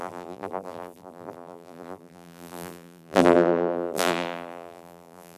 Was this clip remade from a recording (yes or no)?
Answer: yes